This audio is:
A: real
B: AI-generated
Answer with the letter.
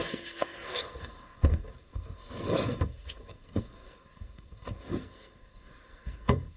B